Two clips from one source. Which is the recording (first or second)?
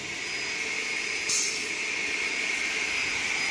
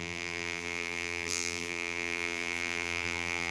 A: first